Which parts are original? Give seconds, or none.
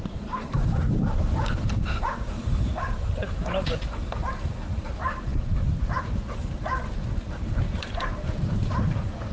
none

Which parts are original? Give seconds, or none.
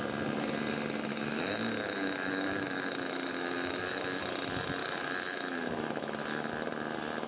0.0-1.1; 4.2-4.8; 6.5-7.3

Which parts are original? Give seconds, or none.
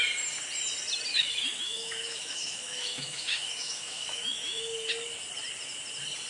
0.0-1.1; 4.9-6.3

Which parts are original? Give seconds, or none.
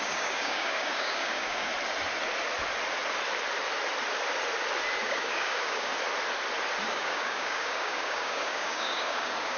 1.7-5.0; 5.9-6.9